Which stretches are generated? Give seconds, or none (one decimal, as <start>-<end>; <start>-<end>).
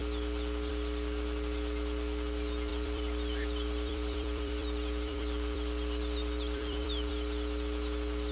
2.7-7.1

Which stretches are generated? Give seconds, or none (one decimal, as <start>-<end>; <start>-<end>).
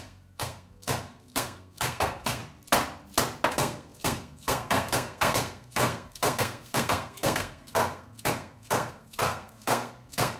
0.0-2.4; 3.5-10.4